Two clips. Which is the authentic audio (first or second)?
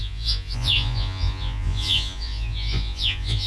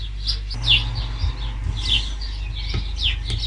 second